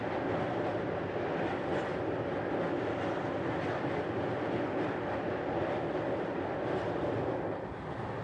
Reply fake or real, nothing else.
real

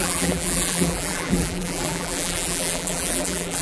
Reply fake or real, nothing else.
fake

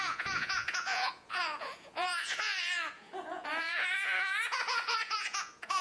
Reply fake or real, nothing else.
fake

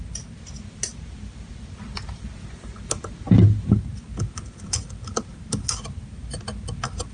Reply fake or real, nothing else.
real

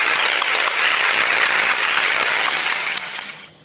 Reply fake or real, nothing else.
fake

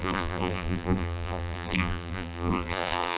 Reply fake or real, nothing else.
fake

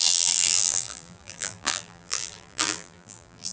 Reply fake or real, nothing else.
fake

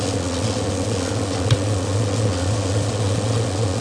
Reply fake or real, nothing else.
fake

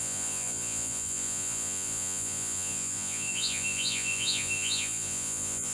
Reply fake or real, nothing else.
fake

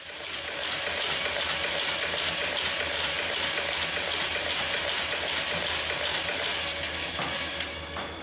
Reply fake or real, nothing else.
real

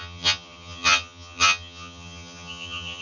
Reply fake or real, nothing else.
fake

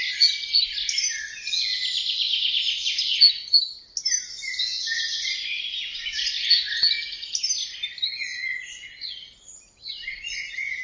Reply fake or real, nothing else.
real